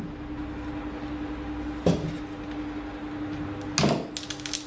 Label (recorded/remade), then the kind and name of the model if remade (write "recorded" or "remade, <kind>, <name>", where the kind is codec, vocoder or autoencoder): recorded